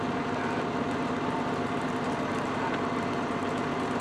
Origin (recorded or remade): recorded